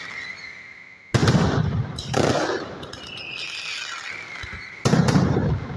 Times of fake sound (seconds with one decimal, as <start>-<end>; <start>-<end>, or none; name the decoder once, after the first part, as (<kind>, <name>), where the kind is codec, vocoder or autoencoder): 1.2-3.4 (vocoder, BigVGAN v2)

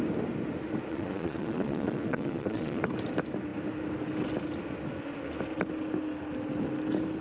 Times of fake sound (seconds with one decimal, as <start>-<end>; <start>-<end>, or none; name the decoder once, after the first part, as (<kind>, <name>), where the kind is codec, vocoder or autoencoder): 0.9-2.8 (vocoder, Vocos)

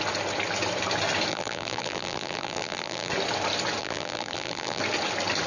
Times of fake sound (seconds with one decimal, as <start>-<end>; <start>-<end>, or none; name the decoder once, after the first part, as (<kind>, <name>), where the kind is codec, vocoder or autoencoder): 1.3-3.1 (vocoder, BigVGAN v2); 3.8-4.8

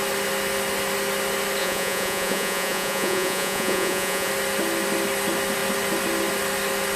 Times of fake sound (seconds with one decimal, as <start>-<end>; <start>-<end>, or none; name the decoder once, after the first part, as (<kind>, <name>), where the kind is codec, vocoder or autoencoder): 1.6-4.3 (vocoder, Vocos)